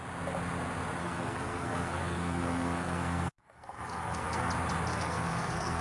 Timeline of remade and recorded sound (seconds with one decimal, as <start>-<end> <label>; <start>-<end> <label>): 0.0-1.0 recorded; 1.0-4.5 remade; 4.5-4.9 recorded; 4.9-5.8 remade